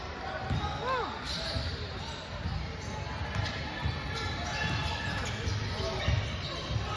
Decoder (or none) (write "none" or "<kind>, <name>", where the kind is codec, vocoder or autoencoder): none